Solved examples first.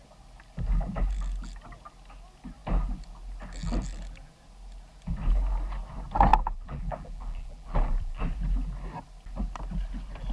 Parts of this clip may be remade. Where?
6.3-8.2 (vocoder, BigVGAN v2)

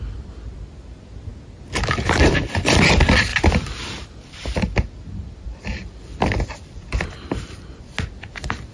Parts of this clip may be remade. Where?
3.3-7.8 (vocoder, BigVGAN v2)

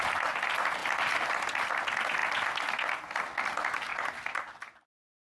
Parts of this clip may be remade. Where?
0.8-1.8 (vocoder, BigVGAN v2); 3.9-4.4